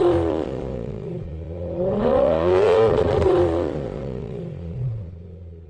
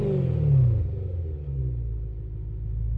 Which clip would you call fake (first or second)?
first